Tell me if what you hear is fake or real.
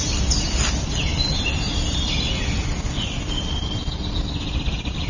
real